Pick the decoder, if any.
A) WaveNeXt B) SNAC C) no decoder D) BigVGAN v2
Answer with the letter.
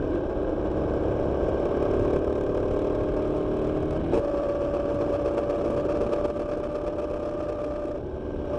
C